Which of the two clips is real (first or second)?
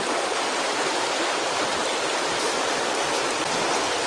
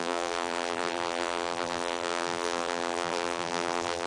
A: first